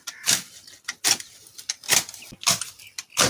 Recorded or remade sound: recorded